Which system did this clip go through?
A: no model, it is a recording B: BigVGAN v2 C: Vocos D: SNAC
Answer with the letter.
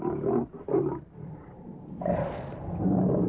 B